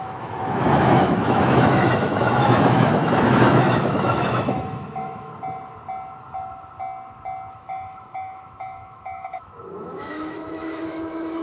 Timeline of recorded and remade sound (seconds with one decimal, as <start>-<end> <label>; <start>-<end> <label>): 0.0-5.3 remade; 5.3-7.5 recorded; 7.5-11.4 remade

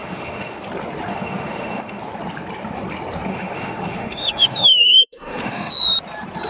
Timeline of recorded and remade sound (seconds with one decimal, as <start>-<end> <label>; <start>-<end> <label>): 0.0-0.6 remade; 0.6-1.1 recorded; 1.1-2.0 remade; 2.0-3.3 recorded; 3.3-5.7 remade; 5.7-6.5 recorded

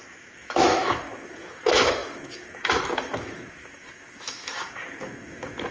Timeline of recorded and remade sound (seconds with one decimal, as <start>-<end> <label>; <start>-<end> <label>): 0.0-5.7 remade

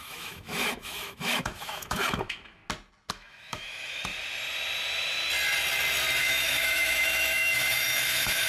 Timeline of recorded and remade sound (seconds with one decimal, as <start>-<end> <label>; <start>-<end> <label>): 0.0-2.6 remade; 2.6-3.1 recorded; 3.1-4.1 remade; 4.1-6.2 recorded; 6.2-8.5 remade

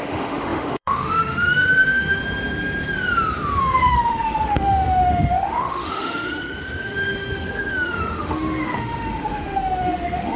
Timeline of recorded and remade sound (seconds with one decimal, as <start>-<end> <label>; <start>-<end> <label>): 0.0-2.2 remade; 2.2-3.6 recorded; 3.6-10.4 remade

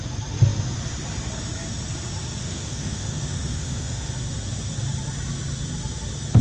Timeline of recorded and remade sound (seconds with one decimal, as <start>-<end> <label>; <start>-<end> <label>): 0.0-2.4 recorded; 2.4-4.1 remade; 4.1-6.4 recorded

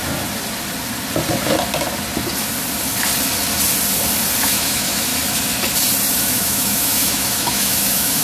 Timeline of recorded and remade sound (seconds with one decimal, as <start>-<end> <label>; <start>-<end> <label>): 0.0-4.4 recorded; 4.4-5.1 remade; 5.1-6.2 recorded; 6.2-8.2 remade

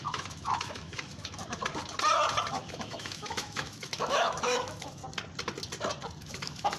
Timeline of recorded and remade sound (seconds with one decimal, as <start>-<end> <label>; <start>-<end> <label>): 0.0-1.6 remade; 1.6-2.5 recorded; 2.5-5.0 remade; 5.0-6.2 recorded; 6.2-6.8 remade